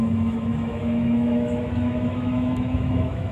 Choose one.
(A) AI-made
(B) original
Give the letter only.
A